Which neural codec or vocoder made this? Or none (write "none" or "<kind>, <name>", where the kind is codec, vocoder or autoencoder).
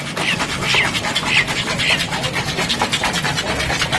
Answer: none